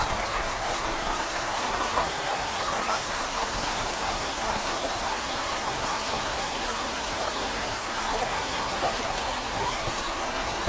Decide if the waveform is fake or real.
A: fake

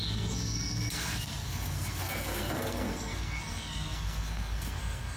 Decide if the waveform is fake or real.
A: fake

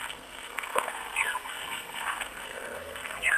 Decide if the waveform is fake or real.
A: fake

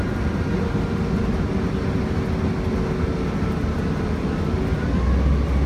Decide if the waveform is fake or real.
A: real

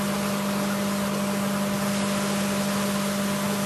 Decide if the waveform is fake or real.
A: real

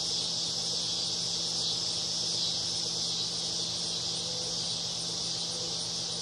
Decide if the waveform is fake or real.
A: real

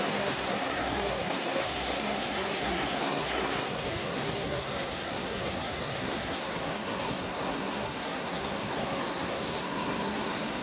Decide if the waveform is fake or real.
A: fake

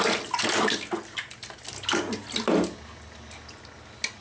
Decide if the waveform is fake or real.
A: real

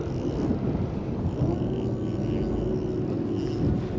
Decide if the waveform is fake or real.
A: real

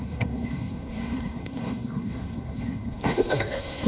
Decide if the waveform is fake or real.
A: fake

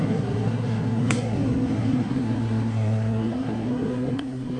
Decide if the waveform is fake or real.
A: fake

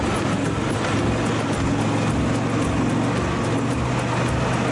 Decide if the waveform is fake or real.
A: real